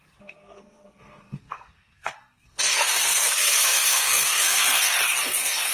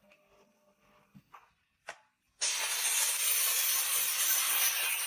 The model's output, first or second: first